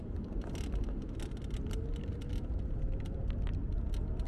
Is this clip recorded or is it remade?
recorded